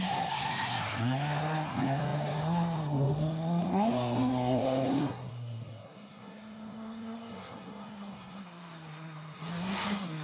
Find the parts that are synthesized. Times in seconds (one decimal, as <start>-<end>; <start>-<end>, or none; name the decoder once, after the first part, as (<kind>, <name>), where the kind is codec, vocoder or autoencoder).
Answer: 0.0-10.2 (codec, SNAC)